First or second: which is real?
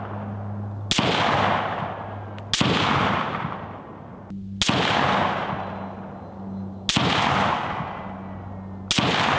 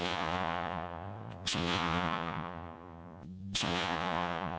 first